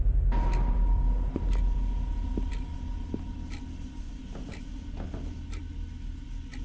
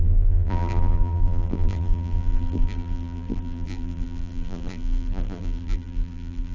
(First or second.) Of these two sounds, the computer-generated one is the second